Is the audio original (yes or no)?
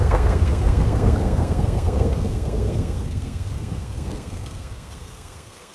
no